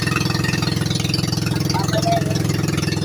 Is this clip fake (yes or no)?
no